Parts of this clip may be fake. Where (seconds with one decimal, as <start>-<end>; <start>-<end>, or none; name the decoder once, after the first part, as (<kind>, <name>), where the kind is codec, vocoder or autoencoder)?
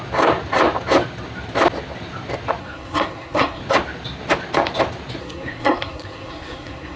2.6-3.6 (codec, SNAC); 5.2-7.0